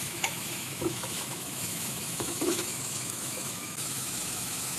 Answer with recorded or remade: remade